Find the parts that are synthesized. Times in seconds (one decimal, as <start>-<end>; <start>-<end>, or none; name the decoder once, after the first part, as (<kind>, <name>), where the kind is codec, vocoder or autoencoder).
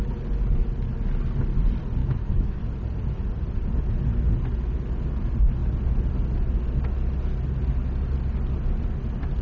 2.0-2.6 (autoencoder, DAC-VAE)